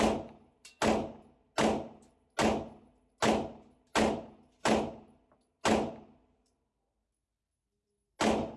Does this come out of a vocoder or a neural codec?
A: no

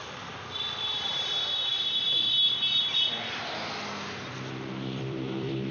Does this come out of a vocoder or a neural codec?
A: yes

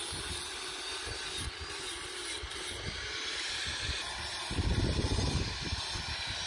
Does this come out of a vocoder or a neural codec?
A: no